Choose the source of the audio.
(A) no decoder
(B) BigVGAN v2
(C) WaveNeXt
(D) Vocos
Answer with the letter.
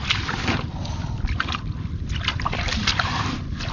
A